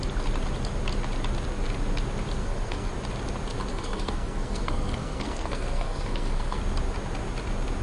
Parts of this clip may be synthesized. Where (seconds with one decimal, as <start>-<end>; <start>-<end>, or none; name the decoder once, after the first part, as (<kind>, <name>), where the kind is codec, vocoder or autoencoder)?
2.4-2.9 (codec, SNAC); 3.7-6.6